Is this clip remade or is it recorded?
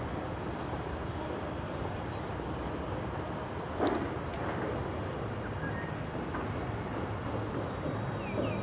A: recorded